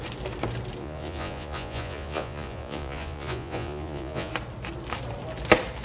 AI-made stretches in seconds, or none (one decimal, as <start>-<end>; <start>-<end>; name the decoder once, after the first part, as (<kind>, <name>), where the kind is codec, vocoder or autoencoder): 0.8-4.3 (vocoder, Vocos)